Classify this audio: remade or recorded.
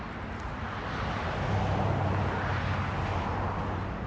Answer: recorded